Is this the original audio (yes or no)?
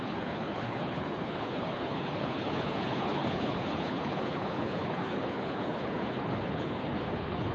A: no